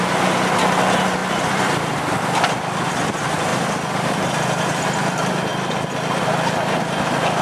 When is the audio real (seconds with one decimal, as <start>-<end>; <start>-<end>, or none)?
0.0-1.2; 2.9-3.5; 4.8-7.4